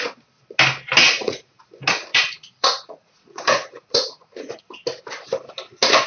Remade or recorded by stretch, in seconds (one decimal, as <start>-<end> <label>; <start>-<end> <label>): 0.0-1.0 recorded; 1.0-1.6 remade; 1.6-2.1 recorded; 2.1-4.6 remade; 4.6-6.1 recorded